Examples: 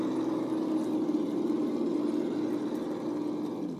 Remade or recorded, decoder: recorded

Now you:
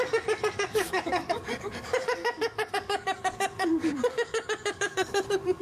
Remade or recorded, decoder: remade, codec, DAC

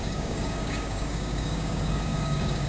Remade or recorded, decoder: remade, codec, DAC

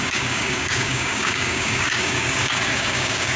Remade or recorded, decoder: remade, codec, DAC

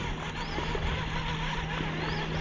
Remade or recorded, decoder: recorded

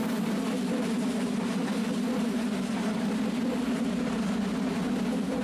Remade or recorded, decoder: recorded